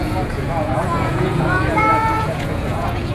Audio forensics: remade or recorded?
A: remade